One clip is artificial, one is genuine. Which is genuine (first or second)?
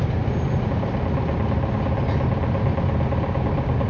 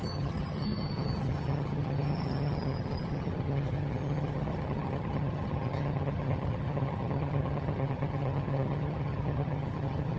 first